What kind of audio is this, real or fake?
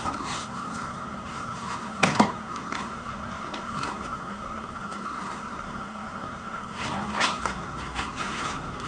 fake